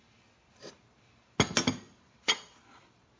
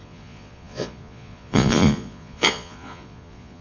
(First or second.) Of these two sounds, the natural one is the first